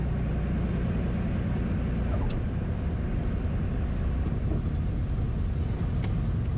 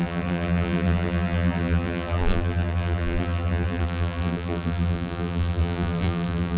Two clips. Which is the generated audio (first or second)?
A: second